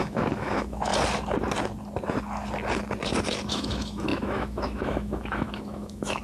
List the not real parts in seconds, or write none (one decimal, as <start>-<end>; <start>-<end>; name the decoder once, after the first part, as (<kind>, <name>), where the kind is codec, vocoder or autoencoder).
0.0-0.9 (autoencoder, DAC-VAE); 3.5-6.2